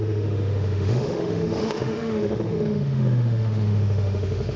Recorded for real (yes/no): no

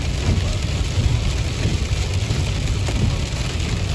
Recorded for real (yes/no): yes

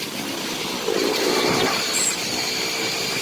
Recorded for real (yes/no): yes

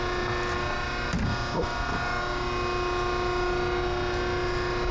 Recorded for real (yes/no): yes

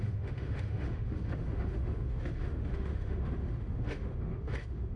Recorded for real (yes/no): no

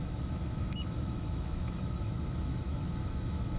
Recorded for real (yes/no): no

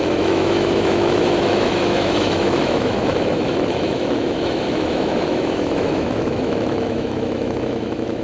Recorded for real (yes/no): no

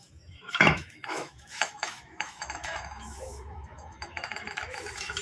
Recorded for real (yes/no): no